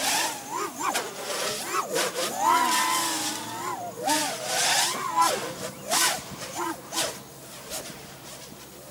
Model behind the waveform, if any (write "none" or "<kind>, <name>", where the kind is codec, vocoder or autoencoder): none